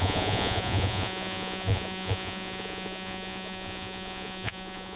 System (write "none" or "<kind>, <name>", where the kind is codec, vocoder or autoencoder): vocoder, Vocos